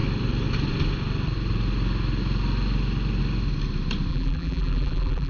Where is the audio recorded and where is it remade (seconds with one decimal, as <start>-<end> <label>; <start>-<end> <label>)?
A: 0.0-4.1 recorded; 4.1-5.3 remade

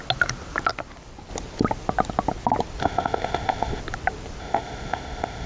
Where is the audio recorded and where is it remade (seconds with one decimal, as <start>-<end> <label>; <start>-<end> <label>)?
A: 0.0-2.8 recorded; 2.8-3.8 remade; 3.8-4.4 recorded; 4.4-5.5 remade

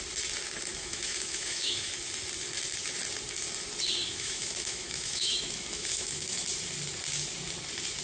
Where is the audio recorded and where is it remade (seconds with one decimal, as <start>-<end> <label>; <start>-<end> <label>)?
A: 0.0-0.7 recorded; 0.7-1.9 remade; 1.9-4.1 recorded; 4.1-6.4 remade; 6.4-8.0 recorded

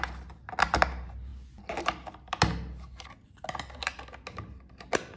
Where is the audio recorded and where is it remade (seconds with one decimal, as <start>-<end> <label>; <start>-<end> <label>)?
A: 0.0-5.2 recorded